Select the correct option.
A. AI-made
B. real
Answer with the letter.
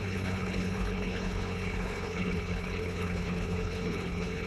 A